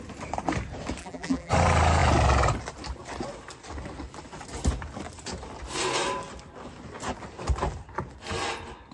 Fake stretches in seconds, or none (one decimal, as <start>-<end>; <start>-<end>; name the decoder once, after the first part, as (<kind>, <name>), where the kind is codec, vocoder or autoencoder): 1.0-1.5 (vocoder, BigVGAN v2)